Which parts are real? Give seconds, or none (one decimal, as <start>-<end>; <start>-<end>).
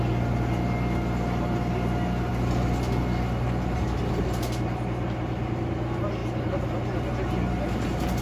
0.0-8.2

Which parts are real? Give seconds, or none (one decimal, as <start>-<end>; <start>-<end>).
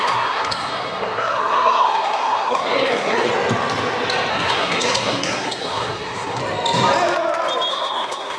3.3-4.3; 6.4-7.7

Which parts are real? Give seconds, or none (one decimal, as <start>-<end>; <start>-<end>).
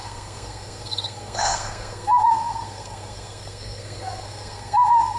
none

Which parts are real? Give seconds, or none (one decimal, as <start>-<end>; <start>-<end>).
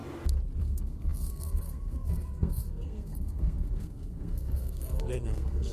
0.0-0.6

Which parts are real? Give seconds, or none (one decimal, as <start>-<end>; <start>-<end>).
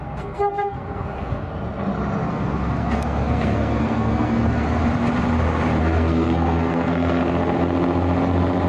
1.5-2.3; 4.8-5.8; 7.2-8.7